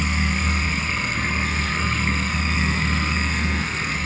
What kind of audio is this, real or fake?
fake